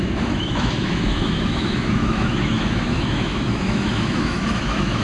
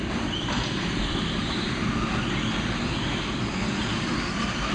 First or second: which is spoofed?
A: first